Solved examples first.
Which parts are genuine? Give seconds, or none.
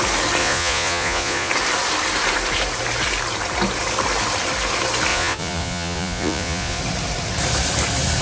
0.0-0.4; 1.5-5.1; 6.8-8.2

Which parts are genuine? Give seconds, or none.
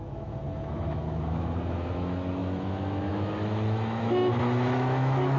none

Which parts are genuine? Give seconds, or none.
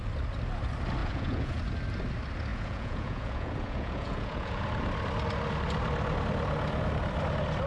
0.0-1.0; 1.6-2.5; 4.6-7.7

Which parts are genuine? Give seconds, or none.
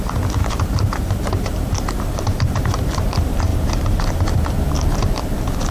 0.0-0.4; 2.9-3.5; 4.0-5.7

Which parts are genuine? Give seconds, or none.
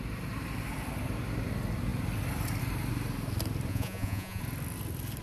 0.0-3.7; 4.4-5.2